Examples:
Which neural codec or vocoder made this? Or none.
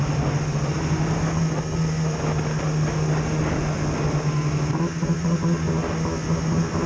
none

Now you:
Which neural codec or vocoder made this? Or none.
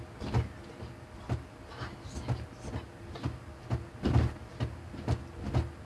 none